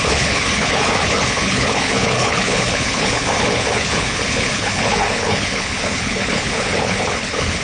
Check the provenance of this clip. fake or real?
fake